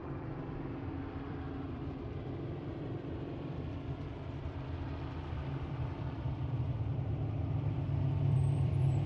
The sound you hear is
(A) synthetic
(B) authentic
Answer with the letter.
A